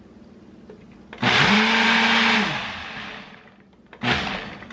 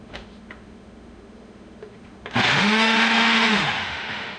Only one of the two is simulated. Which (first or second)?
second